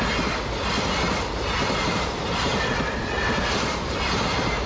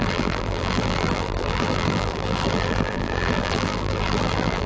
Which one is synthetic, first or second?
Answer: second